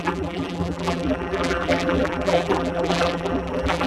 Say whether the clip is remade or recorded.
remade